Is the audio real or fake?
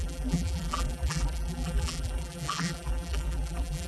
fake